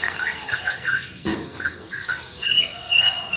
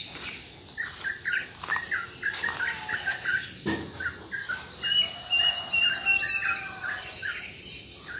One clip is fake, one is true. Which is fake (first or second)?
first